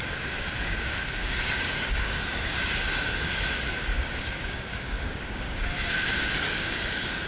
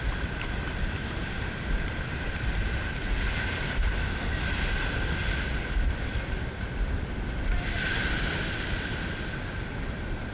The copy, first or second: first